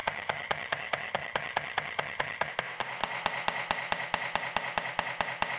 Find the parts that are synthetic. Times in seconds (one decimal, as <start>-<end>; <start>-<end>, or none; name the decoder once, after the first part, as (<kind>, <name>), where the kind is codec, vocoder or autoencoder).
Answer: 0.0-2.5 (vocoder, HiFi-GAN)